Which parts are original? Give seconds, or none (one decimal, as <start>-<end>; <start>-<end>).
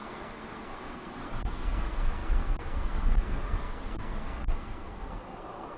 none